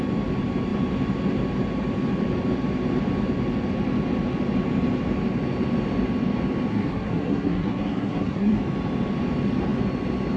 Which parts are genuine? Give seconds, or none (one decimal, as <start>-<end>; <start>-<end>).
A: 0.0-6.7; 8.6-10.4

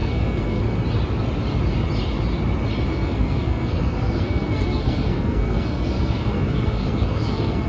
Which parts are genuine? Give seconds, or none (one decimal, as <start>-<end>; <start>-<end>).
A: 0.6-2.9